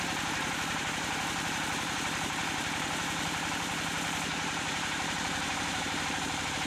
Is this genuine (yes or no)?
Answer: no